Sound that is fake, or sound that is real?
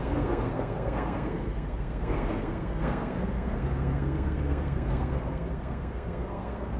fake